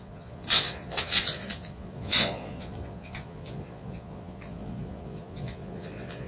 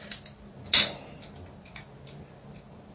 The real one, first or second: second